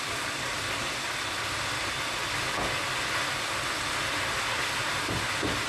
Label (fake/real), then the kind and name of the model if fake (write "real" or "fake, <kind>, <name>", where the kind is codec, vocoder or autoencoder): real